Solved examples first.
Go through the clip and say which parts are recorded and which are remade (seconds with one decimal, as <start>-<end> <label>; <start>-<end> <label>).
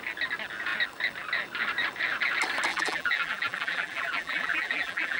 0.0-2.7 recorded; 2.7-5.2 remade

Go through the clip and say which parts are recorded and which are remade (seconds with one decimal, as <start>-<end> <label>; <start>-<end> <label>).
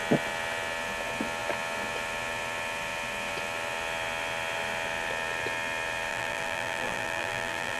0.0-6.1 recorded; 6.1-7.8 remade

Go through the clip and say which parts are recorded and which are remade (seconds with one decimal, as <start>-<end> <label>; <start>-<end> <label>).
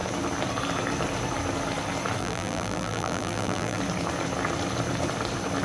0.0-2.2 recorded; 2.2-3.8 remade; 3.8-5.6 recorded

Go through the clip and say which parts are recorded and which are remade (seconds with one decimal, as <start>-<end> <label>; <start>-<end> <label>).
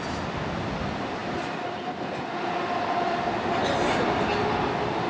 0.0-5.1 recorded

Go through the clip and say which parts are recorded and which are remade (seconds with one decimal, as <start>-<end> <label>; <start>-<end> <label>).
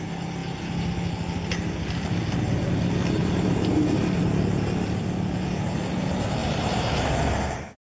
0.0-3.2 recorded; 3.2-4.2 remade; 4.2-6.4 recorded; 6.4-7.2 remade; 7.2-8.0 recorded